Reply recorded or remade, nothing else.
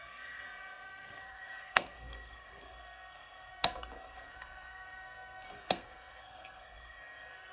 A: remade